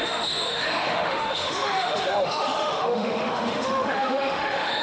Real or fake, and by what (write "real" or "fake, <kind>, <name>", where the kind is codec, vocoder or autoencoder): fake, autoencoder, DAC-VAE